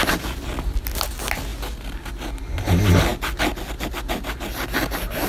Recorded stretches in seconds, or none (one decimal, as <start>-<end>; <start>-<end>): 0.0-5.3